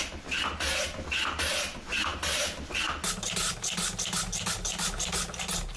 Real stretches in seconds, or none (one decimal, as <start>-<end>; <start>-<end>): 0.0-5.8